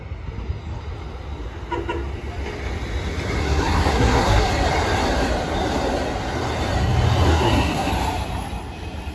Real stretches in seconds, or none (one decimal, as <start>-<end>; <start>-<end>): 0.0-3.4; 4.5-7.3; 7.9-9.1